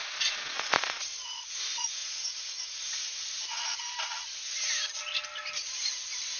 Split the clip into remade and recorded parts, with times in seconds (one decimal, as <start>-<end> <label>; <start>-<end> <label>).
0.0-1.0 remade; 1.0-6.4 recorded

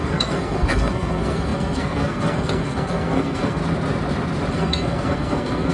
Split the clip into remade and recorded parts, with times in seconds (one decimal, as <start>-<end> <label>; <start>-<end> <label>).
0.0-3.6 remade; 3.6-4.5 recorded; 4.5-5.7 remade

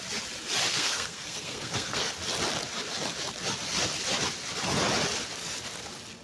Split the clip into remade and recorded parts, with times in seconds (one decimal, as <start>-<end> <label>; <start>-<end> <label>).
0.0-0.7 recorded; 0.7-2.1 remade; 2.1-6.2 recorded

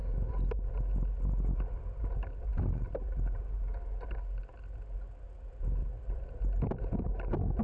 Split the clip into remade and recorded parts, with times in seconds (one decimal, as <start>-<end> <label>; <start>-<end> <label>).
0.0-5.8 recorded; 5.8-7.1 remade; 7.1-7.6 recorded